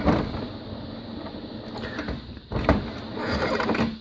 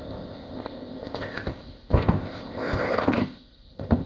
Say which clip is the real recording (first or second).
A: first